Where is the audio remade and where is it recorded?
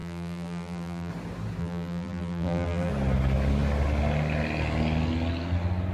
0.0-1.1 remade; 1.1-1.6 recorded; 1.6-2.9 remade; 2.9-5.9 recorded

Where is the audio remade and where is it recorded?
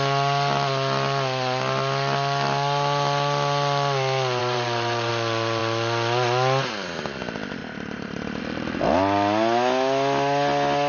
0.0-4.4 recorded; 4.4-5.1 remade; 5.1-7.6 recorded; 7.6-8.4 remade; 8.4-10.9 recorded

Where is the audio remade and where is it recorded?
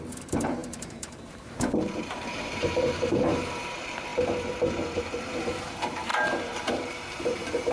0.0-7.7 remade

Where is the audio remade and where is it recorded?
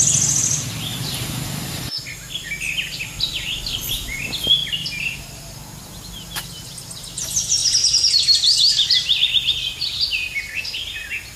0.0-0.9 recorded; 0.9-1.8 remade; 1.8-4.6 recorded; 4.6-5.6 remade; 5.6-11.4 recorded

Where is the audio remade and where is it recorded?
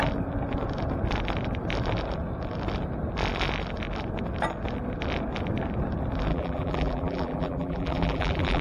0.0-6.3 recorded; 6.3-8.6 remade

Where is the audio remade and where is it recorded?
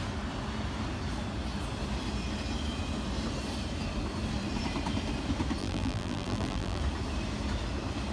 0.0-5.6 recorded; 5.6-6.8 remade; 6.8-8.1 recorded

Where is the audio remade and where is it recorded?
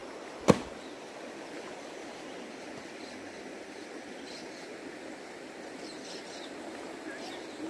0.0-7.7 recorded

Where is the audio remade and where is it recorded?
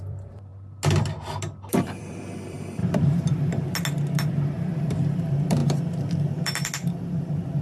0.0-0.5 remade; 0.5-1.7 recorded; 1.7-2.8 remade; 2.8-4.3 recorded; 4.3-5.6 remade; 5.6-7.6 recorded